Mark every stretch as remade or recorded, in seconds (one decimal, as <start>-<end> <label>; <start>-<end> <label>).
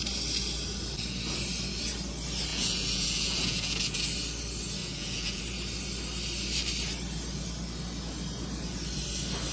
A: 0.0-2.5 recorded; 2.5-4.0 remade; 4.0-4.8 recorded; 4.8-5.4 remade; 5.4-9.5 recorded